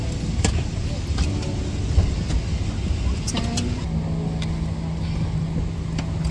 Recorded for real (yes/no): yes